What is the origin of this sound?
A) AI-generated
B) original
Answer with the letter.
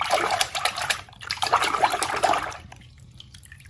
A